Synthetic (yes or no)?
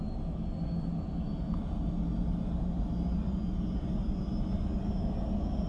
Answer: no